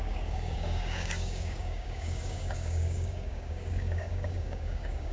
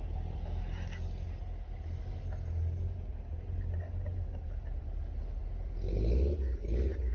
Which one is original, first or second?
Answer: second